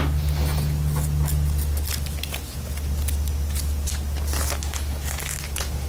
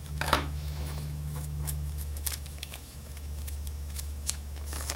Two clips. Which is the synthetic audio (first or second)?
second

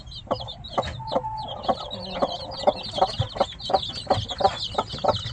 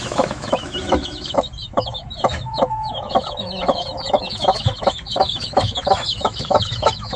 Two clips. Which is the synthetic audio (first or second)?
second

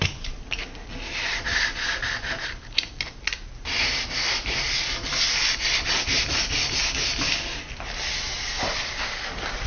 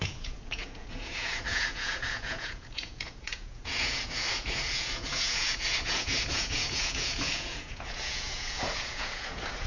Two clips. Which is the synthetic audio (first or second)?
second